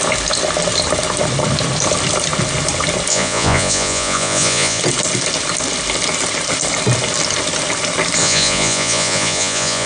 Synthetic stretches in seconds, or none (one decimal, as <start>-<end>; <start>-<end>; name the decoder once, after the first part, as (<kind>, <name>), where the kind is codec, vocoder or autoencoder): 3.1-4.8 (vocoder, Vocos); 8.2-9.9